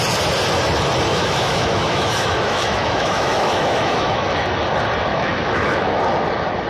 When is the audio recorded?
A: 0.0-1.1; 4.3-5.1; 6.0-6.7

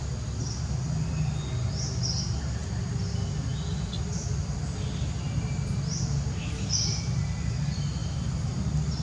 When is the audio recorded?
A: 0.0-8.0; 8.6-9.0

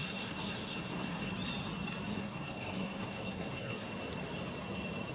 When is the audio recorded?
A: 1.3-2.1; 3.9-5.1